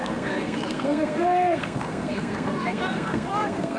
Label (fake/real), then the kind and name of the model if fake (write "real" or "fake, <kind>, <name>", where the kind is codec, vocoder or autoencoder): fake, codec, SNAC